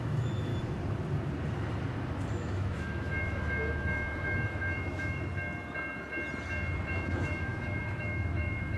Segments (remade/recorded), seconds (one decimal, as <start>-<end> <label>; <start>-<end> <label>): 0.0-0.5 remade; 0.5-2.3 recorded; 2.3-5.3 remade; 5.3-6.9 recorded; 6.9-8.8 remade

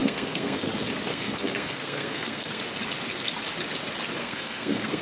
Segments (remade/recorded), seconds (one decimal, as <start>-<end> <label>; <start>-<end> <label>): 0.0-0.7 remade; 0.7-1.1 recorded; 1.1-2.6 remade; 2.6-4.2 recorded; 4.2-5.0 remade

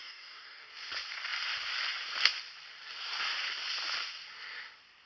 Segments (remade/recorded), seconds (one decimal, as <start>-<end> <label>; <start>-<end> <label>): 0.0-0.7 remade; 0.7-5.1 recorded

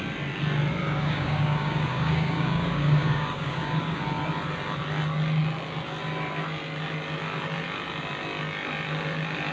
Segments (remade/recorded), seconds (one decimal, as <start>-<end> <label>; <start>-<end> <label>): 0.0-0.8 recorded; 0.8-4.0 remade; 4.0-9.5 recorded

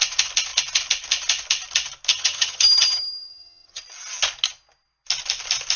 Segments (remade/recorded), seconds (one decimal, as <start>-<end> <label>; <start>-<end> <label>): 0.0-2.1 recorded; 2.1-3.8 remade; 3.8-5.8 recorded

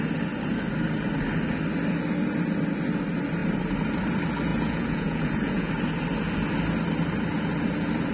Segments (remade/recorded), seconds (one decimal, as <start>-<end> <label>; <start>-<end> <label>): 0.0-4.5 recorded; 4.5-5.7 remade; 5.7-8.1 recorded